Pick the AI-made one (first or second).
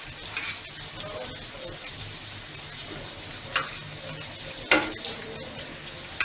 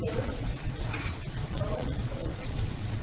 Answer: second